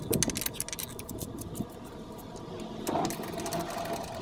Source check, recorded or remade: recorded